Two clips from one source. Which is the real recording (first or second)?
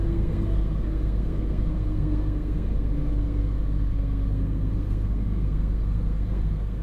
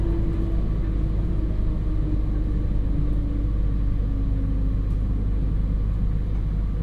second